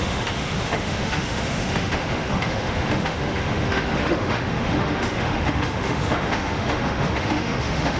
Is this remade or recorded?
remade